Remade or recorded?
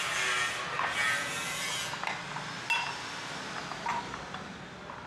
remade